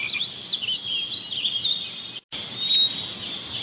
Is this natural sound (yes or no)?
yes